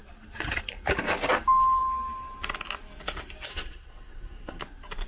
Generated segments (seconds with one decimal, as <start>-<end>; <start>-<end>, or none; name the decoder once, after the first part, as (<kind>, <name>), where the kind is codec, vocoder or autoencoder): 3.5-4.6 (codec, SNAC)